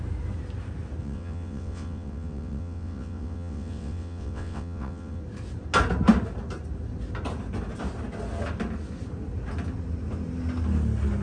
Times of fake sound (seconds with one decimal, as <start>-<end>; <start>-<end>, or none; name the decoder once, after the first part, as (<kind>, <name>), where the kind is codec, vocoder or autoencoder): 1.0-5.2 (vocoder, WaveNeXt)